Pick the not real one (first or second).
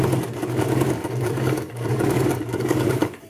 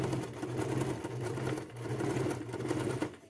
first